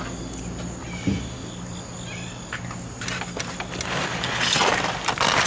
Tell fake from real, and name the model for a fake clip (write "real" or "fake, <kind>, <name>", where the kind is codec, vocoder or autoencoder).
real